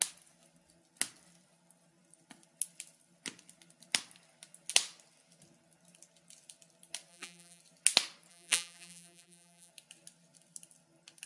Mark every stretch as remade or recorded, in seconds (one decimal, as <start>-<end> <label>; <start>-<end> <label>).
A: 0.0-7.1 recorded; 7.1-7.6 remade; 7.6-8.3 recorded; 8.3-9.7 remade; 9.7-11.3 recorded